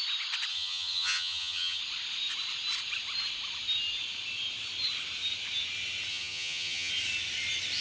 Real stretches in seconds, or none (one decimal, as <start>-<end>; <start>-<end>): 0.0-0.5; 1.8-6.1; 6.9-7.8